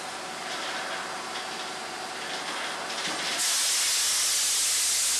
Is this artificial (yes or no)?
no